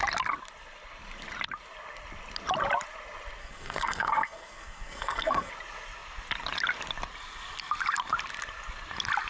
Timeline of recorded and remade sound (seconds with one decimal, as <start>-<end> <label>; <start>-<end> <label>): 0.0-3.4 recorded; 3.4-5.5 remade; 5.5-9.3 recorded